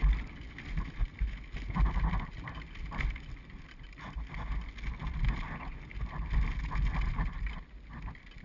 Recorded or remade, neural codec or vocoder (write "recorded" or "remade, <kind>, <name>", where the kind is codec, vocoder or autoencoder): recorded